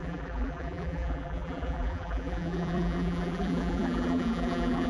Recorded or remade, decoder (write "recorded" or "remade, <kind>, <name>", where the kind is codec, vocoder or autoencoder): remade, vocoder, BigVGAN v2